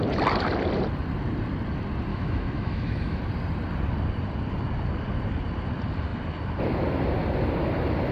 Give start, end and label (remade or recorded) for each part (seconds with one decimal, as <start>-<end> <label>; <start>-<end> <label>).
0.0-2.1 recorded; 2.1-3.2 remade; 3.2-8.1 recorded